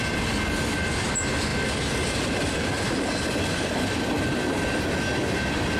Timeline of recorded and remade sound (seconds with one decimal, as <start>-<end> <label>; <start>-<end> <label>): 0.0-5.8 recorded